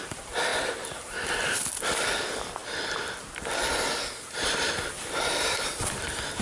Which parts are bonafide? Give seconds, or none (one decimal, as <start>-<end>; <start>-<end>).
0.5-1.1; 2.6-4.9

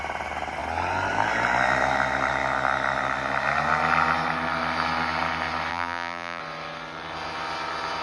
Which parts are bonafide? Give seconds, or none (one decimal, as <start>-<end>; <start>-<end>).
0.0-5.7; 6.4-8.0

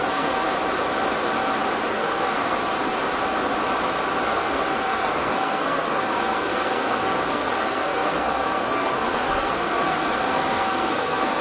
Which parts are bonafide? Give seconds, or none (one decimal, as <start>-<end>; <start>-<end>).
0.5-1.9; 2.7-4.2

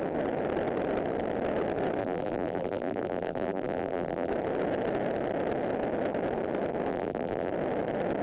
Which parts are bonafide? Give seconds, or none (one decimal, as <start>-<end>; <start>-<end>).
0.0-2.0; 4.3-6.9; 7.5-8.2

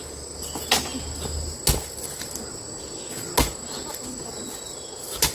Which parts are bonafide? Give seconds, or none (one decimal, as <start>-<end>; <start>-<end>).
0.0-5.3

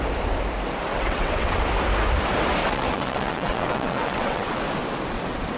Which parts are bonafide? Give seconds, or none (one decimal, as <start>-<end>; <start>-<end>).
0.0-0.9; 1.6-2.6; 4.6-5.6

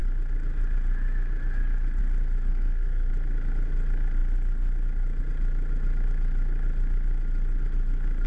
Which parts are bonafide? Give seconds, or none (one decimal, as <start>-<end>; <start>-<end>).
0.0-2.5; 3.1-8.3